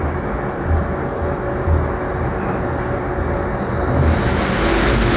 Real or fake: real